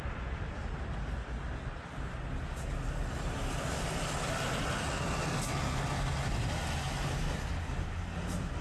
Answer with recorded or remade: recorded